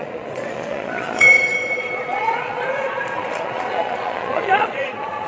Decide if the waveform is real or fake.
fake